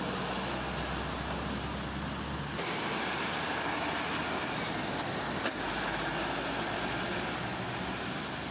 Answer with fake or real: real